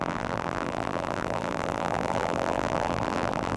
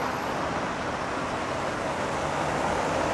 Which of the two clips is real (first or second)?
second